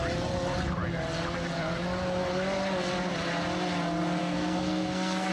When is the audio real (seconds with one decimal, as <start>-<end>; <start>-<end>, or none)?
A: 0.0-4.2